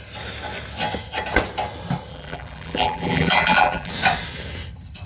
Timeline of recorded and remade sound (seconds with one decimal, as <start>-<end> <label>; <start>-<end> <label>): 0.0-2.1 recorded; 2.1-3.9 remade; 3.9-5.1 recorded